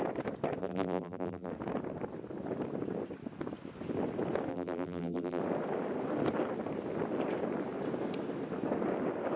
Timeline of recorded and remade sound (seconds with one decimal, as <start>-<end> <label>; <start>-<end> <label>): 0.0-0.6 recorded; 0.6-1.5 remade; 1.5-4.5 recorded; 4.5-5.4 remade; 5.4-9.4 recorded